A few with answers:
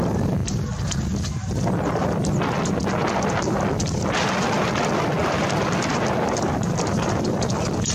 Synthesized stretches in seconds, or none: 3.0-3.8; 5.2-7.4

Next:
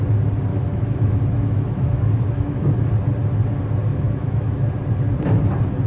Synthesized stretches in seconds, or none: 0.5-2.9; 3.9-4.7

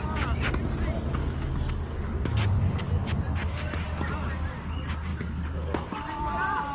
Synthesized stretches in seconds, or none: 1.2-2.9; 5.1-6.2

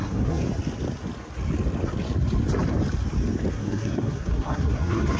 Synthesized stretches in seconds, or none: 0.0-0.4; 3.5-5.2